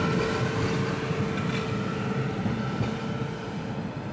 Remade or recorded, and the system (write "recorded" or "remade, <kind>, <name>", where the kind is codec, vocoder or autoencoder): recorded